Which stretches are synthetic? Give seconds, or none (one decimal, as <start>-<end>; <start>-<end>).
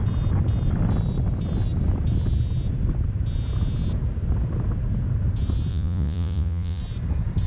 5.7-6.8